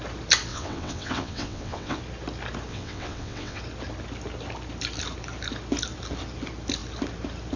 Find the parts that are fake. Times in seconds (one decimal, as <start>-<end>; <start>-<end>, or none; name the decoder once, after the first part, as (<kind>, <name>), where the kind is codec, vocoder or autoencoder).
0.5-2.0 (vocoder, WaveNeXt); 2.7-3.6